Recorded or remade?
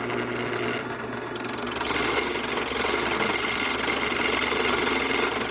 recorded